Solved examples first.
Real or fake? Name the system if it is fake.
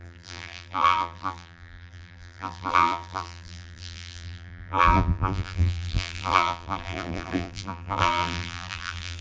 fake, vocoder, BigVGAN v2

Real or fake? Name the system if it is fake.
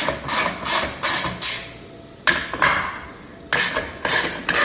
real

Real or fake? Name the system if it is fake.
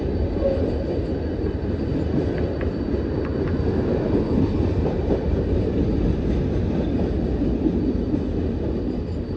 real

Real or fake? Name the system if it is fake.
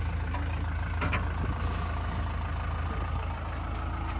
real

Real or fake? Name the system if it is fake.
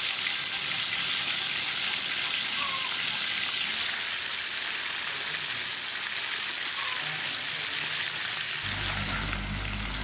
real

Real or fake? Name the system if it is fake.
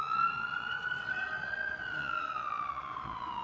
fake, vocoder, Vocos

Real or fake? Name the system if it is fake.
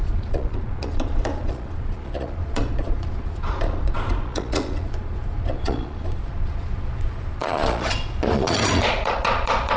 fake, vocoder, Vocos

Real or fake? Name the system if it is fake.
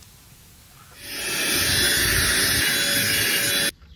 real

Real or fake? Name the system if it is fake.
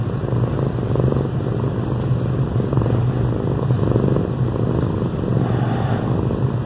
real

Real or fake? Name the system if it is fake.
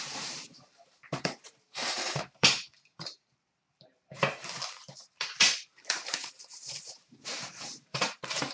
fake, vocoder, BigVGAN v2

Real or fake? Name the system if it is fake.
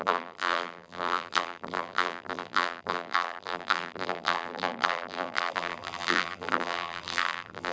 fake, vocoder, BigVGAN v2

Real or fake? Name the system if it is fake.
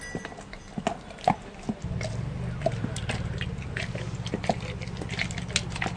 real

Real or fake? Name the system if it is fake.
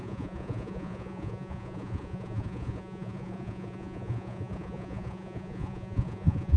fake, vocoder, Vocos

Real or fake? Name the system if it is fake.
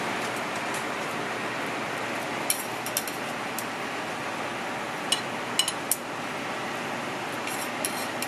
real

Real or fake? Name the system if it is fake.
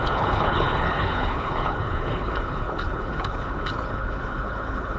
fake, codec, HILCodec